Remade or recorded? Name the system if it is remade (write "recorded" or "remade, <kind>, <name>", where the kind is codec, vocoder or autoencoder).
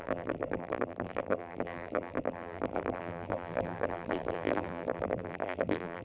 remade, vocoder, BigVGAN v2